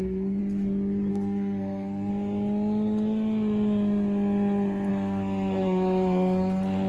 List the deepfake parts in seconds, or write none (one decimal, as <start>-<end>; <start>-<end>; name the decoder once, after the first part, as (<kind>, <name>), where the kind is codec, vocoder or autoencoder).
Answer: 0.0-0.4 (codec, SNAC); 1.1-2.1; 4.9-6.9